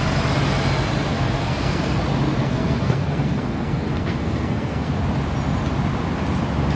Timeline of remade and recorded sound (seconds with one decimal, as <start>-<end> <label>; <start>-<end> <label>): 0.0-1.1 recorded; 1.1-2.0 remade; 2.0-2.4 recorded; 2.4-4.9 remade; 4.9-6.8 recorded